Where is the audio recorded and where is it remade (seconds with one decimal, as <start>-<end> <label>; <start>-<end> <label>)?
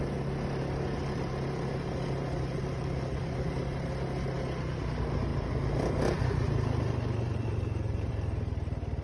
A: 0.0-1.0 recorded; 1.0-3.6 remade; 3.6-5.3 recorded; 5.3-8.1 remade; 8.1-9.0 recorded